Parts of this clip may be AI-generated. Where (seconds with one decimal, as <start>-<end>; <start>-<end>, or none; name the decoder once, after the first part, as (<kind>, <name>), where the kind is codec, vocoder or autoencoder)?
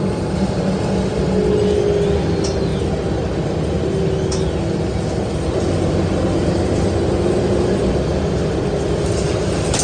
none